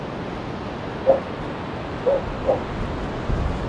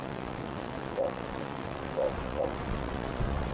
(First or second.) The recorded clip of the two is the first